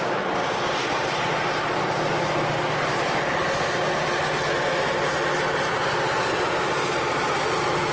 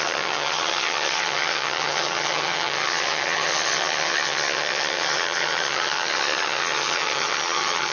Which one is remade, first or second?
second